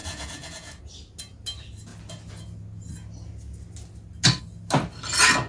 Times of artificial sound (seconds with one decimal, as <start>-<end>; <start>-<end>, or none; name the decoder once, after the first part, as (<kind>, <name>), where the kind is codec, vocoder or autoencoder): 0.0-0.8 (vocoder, Vocos)